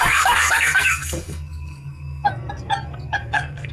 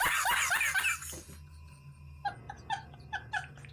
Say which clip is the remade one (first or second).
first